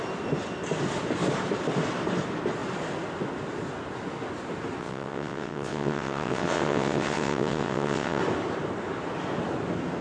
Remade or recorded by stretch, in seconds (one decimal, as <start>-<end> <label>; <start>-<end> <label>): 0.0-4.8 recorded; 4.8-8.2 remade; 8.2-10.0 recorded